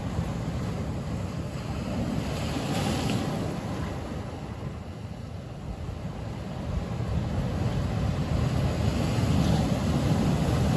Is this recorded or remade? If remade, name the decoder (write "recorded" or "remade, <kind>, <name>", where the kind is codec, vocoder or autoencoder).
recorded